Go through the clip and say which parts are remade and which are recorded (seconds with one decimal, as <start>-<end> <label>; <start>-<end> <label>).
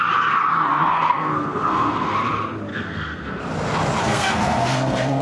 0.0-0.7 recorded; 0.7-2.1 remade; 2.1-2.7 recorded; 2.7-3.4 remade; 3.4-4.0 recorded; 4.0-5.2 remade